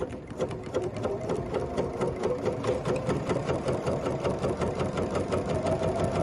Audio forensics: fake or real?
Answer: real